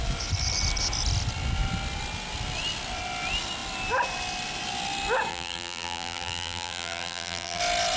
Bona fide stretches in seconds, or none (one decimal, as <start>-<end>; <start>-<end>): 0.0-5.3; 7.6-8.0